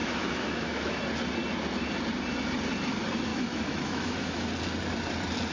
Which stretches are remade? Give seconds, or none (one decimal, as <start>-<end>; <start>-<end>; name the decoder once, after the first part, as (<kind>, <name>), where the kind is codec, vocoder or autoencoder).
0.0-1.0 (autoencoder, DAC-VAE); 3.3-4.5